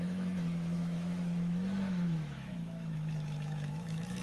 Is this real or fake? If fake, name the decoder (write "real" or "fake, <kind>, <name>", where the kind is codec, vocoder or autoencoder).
fake, autoencoder, DAC-VAE